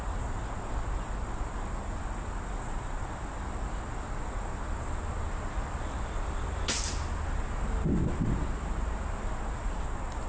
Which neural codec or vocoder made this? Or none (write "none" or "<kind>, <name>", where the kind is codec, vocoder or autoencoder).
none